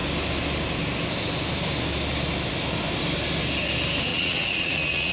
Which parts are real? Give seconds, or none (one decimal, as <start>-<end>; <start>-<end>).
0.0-4.1